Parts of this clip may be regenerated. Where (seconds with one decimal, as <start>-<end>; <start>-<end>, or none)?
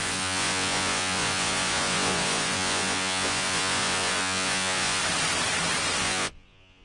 0.0-5.0; 6.0-6.8